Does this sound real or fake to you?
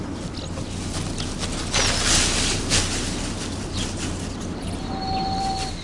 real